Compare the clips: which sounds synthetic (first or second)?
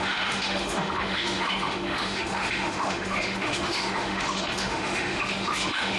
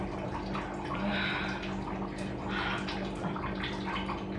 first